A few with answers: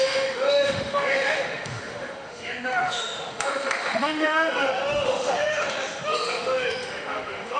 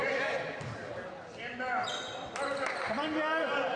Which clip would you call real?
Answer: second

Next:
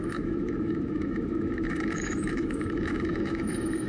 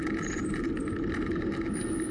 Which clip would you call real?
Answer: second